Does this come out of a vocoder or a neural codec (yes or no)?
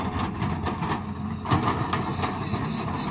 no